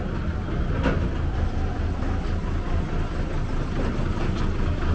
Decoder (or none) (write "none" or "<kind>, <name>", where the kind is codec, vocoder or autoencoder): none